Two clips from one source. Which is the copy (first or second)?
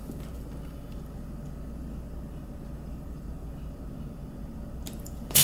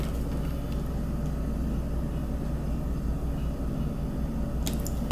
first